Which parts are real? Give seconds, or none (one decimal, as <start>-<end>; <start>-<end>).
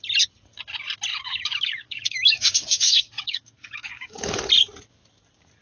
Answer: 0.0-1.1; 4.5-5.6